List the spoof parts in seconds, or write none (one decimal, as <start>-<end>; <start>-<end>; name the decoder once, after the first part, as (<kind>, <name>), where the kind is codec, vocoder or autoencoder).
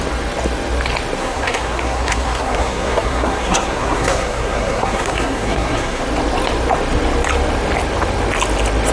1.2-6.0 (codec, SNAC)